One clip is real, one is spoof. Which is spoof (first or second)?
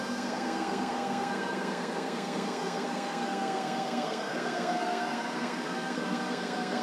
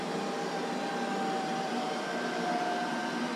first